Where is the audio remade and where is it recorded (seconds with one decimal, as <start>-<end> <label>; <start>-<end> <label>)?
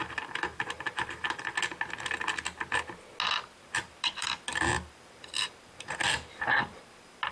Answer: 0.0-1.7 remade; 1.7-3.4 recorded; 3.4-7.3 remade